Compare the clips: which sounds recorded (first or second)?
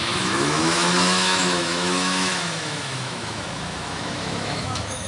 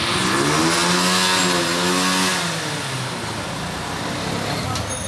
second